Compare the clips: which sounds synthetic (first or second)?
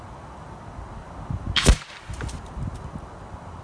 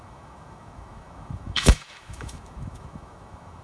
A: second